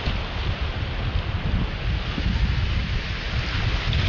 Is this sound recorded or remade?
recorded